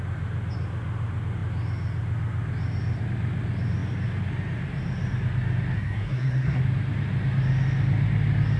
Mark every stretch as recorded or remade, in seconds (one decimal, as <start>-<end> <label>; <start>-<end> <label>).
0.0-5.7 recorded; 5.7-6.6 remade; 6.6-8.6 recorded